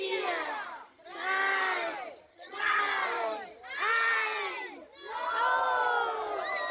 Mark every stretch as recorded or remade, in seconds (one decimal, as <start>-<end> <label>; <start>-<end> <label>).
0.0-2.3 recorded; 2.3-2.8 remade; 2.8-6.7 recorded